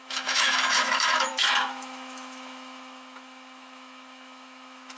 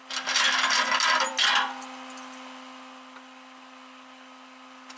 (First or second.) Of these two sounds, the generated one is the first